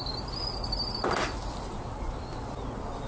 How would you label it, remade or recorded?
recorded